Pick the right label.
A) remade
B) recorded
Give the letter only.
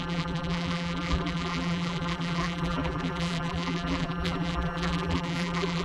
A